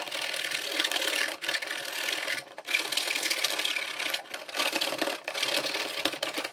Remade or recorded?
recorded